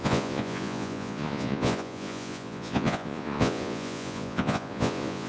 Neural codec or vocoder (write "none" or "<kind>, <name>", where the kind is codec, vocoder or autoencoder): vocoder, Vocos